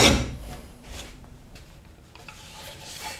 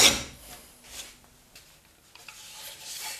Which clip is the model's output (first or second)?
first